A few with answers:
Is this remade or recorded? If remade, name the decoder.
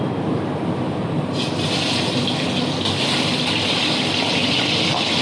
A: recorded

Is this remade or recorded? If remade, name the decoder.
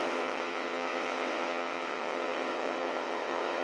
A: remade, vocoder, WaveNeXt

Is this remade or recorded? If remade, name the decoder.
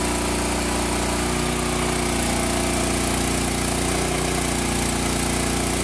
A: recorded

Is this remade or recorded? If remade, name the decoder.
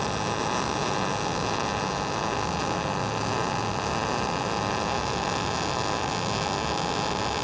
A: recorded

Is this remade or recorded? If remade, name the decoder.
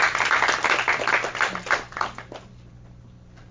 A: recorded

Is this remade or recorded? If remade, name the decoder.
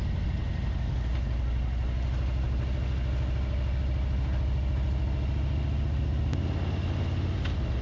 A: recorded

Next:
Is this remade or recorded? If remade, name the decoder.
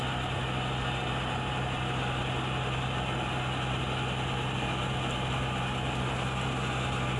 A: recorded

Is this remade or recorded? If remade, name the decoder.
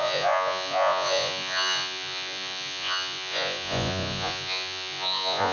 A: remade, vocoder, Vocos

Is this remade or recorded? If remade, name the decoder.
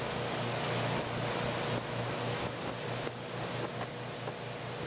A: recorded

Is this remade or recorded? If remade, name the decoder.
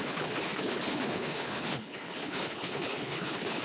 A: remade, codec, HILCodec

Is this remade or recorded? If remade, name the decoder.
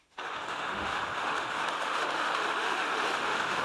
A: remade, autoencoder, DAC-VAE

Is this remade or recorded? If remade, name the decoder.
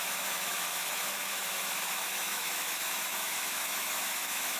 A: remade, autoencoder, DAC-VAE